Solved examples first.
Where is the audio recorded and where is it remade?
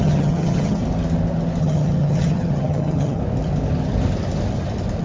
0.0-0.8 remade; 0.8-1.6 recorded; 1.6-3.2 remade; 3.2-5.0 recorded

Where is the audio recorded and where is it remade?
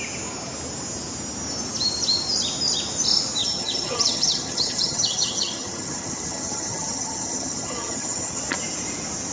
0.0-3.4 recorded; 3.4-8.4 remade; 8.4-9.3 recorded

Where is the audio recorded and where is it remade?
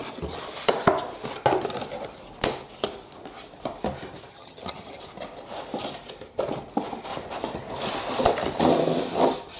0.0-4.3 recorded; 4.3-5.0 remade; 5.0-9.6 recorded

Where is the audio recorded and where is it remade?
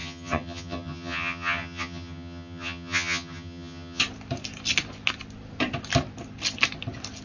0.0-4.0 remade; 4.0-7.2 recorded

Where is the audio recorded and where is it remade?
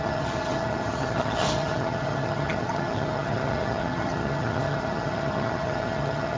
0.0-6.4 remade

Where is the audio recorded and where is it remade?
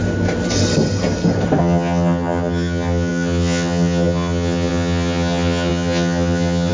0.0-1.6 recorded; 1.6-6.7 remade